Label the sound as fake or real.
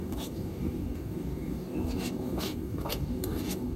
fake